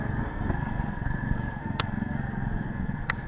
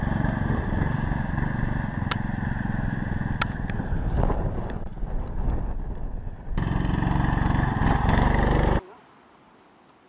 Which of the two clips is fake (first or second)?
first